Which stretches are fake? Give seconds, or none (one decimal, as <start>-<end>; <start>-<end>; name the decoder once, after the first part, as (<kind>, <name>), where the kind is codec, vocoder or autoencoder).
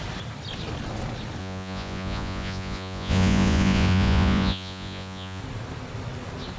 1.4-5.4 (vocoder, Vocos)